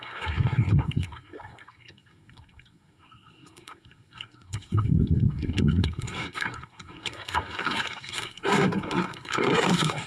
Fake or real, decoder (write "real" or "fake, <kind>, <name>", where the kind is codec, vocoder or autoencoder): fake, codec, SNAC